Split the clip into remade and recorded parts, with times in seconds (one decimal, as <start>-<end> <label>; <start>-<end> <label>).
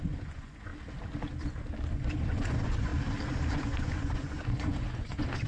0.0-0.7 remade; 0.7-1.9 recorded; 1.9-2.9 remade; 2.9-3.5 recorded; 3.5-5.5 remade